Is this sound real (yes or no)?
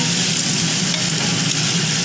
yes